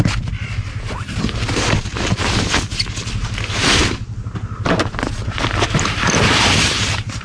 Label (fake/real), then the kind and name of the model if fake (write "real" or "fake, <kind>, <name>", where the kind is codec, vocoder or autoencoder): real